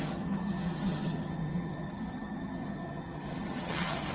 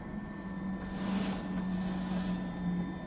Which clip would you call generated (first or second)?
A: first